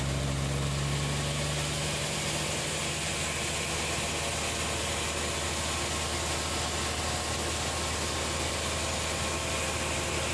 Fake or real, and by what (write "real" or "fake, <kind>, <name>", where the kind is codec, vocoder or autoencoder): real